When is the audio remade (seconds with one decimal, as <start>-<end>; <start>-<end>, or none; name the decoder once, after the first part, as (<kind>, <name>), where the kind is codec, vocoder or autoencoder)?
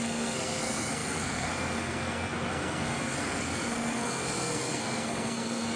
0.0-5.8 (codec, SNAC)